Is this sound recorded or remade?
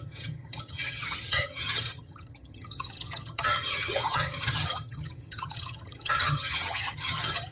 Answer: remade